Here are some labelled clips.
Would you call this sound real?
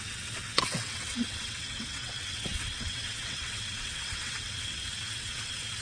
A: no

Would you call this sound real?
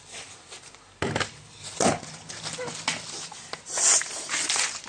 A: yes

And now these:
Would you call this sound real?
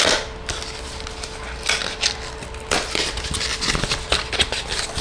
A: yes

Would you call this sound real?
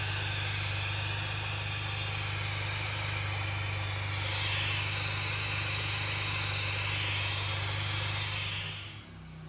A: yes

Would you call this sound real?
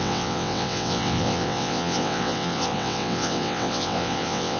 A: no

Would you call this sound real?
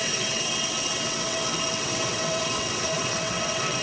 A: no